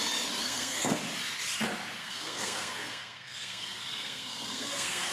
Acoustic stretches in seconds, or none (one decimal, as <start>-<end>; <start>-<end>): 0.0-0.4; 1.0-2.0